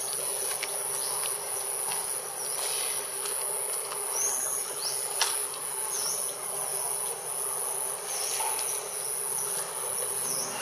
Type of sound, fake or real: real